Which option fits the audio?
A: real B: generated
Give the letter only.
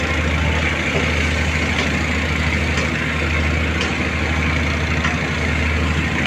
A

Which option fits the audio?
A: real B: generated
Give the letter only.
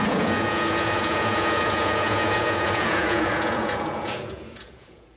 B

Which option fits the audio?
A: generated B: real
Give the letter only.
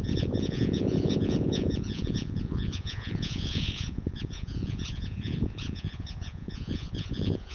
A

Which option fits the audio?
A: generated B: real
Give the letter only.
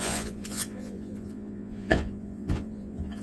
A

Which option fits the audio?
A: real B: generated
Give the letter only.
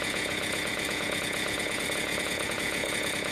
B